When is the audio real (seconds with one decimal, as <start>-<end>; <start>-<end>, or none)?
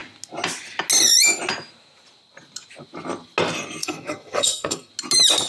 0.0-3.8; 4.9-5.5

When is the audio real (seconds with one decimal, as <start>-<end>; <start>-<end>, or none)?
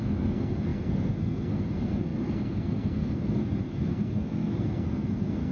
none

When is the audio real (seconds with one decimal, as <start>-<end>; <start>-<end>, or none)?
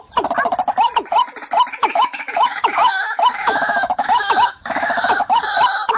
0.0-1.8; 5.4-6.0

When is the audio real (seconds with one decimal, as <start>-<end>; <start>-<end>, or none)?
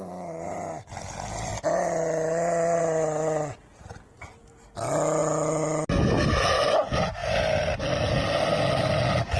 0.0-9.4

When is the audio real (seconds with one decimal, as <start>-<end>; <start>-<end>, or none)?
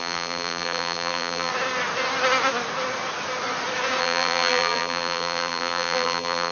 1.5-4.0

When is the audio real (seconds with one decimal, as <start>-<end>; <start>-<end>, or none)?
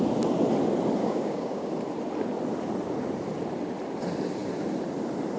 0.0-1.0; 1.7-5.4